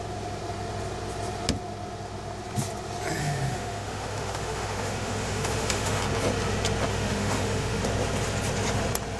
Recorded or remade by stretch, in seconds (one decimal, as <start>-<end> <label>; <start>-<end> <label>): 0.0-3.2 recorded; 3.2-6.0 remade; 6.0-6.9 recorded; 6.9-7.8 remade; 7.8-9.2 recorded